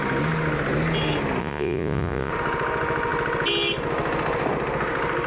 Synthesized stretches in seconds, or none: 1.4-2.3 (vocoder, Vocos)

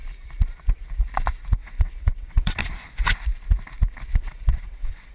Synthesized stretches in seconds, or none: 1.6-2.6 (vocoder, WaveNeXt); 4.1-5.1

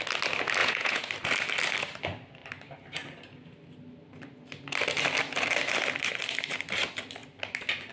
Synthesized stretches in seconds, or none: 0.6-1.1 (vocoder, Vocos)

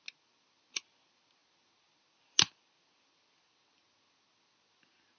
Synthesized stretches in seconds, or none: none

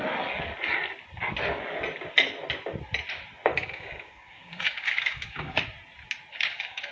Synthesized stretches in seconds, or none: 3.5-5.6 (codec, DAC); 6.3-6.9

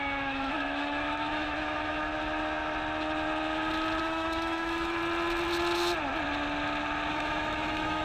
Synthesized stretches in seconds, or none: 0.0-2.1 (autoencoder, DAC-VAE); 4.0-5.0; 7.1-8.0

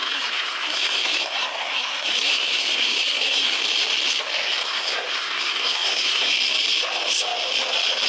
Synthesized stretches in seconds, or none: 0.0-3.6 (codec, SNAC); 4.6-6.3